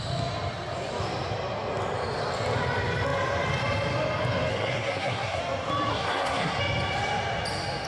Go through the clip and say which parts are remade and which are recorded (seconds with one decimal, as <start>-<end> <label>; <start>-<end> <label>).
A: 0.0-4.5 recorded; 4.5-5.4 remade; 5.4-5.9 recorded; 5.9-6.6 remade; 6.6-7.9 recorded